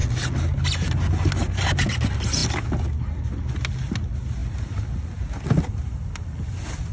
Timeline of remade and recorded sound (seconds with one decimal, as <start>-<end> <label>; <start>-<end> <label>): 0.0-6.9 recorded